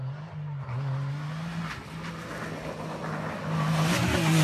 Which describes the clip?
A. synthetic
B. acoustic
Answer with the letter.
B